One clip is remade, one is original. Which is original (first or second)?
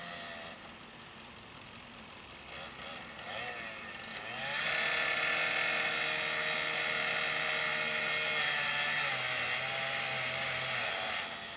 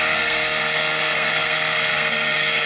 first